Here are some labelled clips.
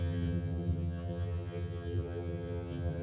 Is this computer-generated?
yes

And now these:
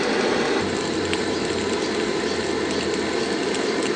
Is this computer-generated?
no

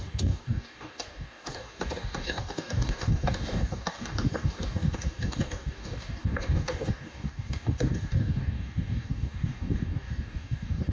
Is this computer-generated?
yes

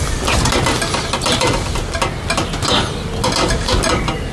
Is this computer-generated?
no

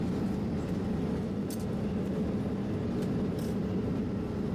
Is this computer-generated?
no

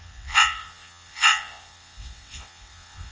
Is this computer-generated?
yes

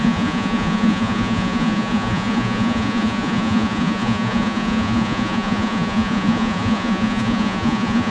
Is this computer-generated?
yes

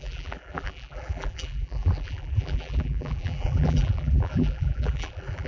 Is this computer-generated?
yes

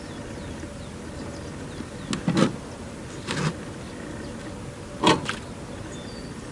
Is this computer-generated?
no